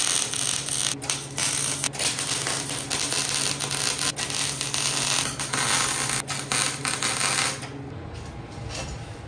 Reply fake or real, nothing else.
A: real